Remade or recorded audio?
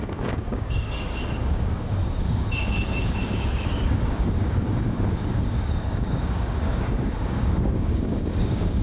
remade